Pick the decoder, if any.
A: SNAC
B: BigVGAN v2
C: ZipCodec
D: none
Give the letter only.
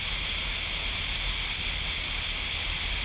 D